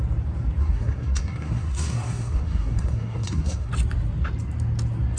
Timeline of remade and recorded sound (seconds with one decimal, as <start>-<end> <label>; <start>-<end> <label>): 0.0-0.6 recorded; 0.6-3.7 remade; 3.7-5.2 recorded